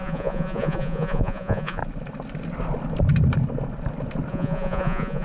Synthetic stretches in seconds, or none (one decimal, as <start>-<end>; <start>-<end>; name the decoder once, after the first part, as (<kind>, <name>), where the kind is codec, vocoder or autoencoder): 0.0-1.8 (vocoder, Vocos); 4.3-5.2